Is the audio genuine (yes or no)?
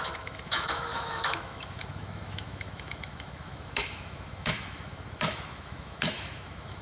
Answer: no